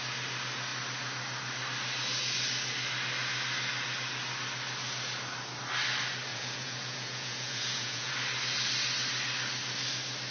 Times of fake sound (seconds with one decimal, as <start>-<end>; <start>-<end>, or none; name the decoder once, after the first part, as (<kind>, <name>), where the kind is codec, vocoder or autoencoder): 6.3-8.1 (vocoder, Vocos)